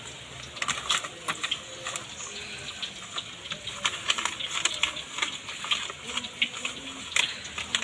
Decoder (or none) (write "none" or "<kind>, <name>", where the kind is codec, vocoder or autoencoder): none